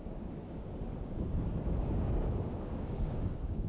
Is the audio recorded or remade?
remade